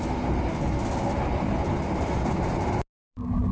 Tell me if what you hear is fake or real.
real